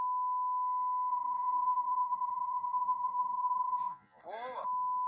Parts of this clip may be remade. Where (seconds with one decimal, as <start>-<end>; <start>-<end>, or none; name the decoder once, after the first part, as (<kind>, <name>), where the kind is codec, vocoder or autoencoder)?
1.1-4.2 (vocoder, Vocos)